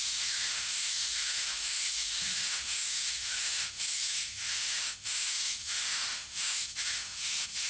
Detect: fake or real fake